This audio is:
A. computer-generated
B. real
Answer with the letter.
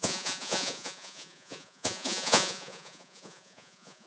A